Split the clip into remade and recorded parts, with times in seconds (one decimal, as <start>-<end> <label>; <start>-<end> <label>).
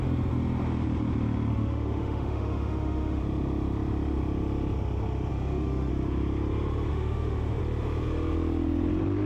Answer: 0.0-1.5 recorded; 1.5-3.2 remade; 3.2-5.3 recorded; 5.3-5.9 remade; 5.9-6.9 recorded; 6.9-7.6 remade; 7.6-9.3 recorded